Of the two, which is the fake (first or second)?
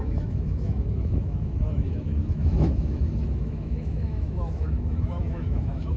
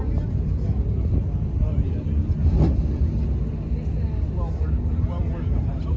first